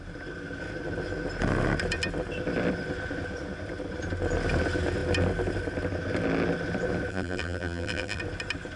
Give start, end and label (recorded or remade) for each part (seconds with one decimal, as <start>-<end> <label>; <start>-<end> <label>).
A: 0.0-7.1 recorded; 7.1-8.2 remade; 8.2-8.8 recorded